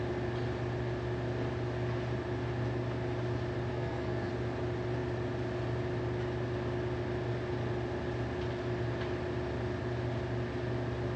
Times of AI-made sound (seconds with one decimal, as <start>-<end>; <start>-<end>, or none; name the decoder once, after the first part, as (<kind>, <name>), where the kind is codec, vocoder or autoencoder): 3.7-4.3 (codec, SNAC)

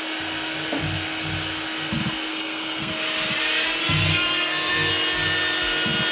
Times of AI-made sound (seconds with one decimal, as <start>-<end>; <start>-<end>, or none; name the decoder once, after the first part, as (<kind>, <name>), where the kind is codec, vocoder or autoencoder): 2.3-2.9 (codec, SNAC); 4.1-4.9

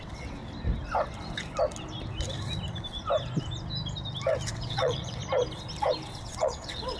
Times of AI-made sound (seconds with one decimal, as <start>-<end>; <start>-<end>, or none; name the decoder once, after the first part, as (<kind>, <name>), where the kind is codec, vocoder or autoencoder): 0.0-0.4 (vocoder, WaveNeXt); 4.5-5.2; 6.2-7.0